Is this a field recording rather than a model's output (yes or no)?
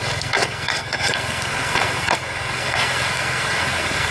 no